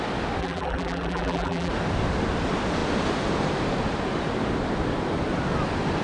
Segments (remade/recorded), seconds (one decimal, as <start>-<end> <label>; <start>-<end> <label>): 0.0-0.4 recorded; 0.4-1.7 remade; 1.7-6.0 recorded